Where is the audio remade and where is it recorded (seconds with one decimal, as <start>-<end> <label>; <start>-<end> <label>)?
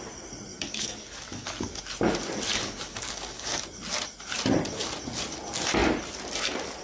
0.0-0.5 recorded; 0.5-1.8 remade; 1.8-2.5 recorded; 2.5-3.6 remade; 3.6-6.8 recorded